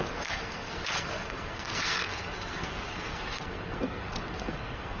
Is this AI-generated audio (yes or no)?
yes